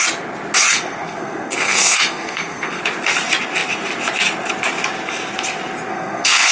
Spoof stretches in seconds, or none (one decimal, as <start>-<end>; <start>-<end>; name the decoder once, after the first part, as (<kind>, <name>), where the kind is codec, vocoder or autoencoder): 0.7-2.8 (codec, SNAC); 5.9-6.5